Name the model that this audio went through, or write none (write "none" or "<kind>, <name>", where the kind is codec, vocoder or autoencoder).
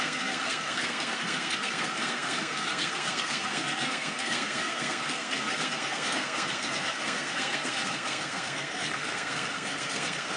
codec, SNAC